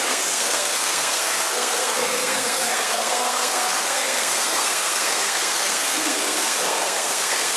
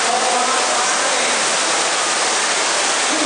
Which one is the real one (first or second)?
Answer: second